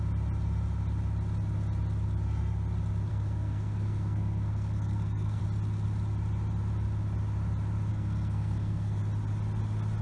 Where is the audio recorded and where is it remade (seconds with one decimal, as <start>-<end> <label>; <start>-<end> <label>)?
0.0-3.1 recorded; 3.1-5.4 remade; 5.4-7.9 recorded; 7.9-9.0 remade; 9.0-10.0 recorded